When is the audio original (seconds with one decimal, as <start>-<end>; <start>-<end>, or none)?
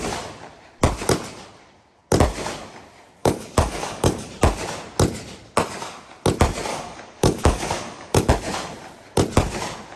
0.0-3.2; 4.3-6.7; 8.3-10.0